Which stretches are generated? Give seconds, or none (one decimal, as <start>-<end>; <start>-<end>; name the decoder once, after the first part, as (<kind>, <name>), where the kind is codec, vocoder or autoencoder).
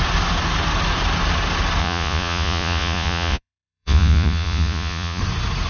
1.8-5.2 (vocoder, Vocos)